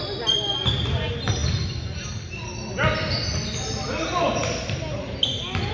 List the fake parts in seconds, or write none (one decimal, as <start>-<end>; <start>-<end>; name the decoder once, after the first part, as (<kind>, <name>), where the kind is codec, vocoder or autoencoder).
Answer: none